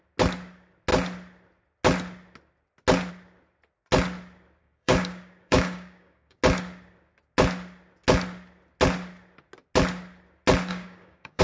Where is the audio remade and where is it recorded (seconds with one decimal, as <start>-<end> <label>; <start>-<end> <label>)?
0.0-4.6 recorded; 4.6-6.4 remade; 6.4-10.7 recorded; 10.7-11.4 remade